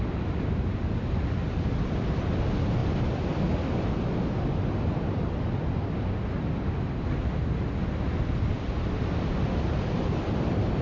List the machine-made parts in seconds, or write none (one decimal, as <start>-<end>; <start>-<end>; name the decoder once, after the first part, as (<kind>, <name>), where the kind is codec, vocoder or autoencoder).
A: none